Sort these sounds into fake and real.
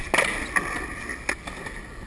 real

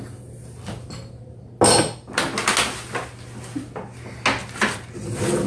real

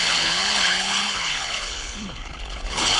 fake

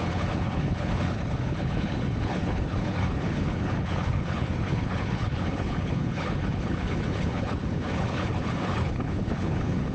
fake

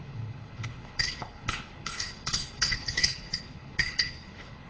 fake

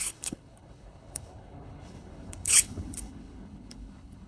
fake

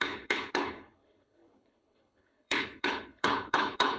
fake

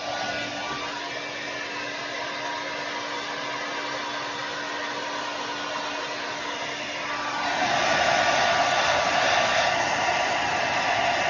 real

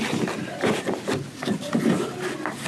real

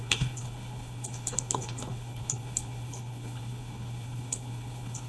fake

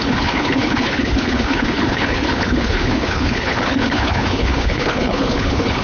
fake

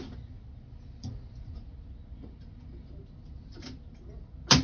real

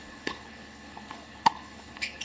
fake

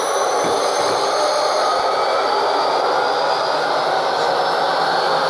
real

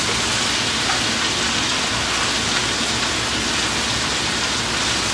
real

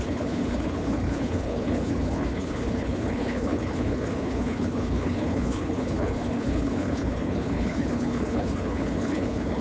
fake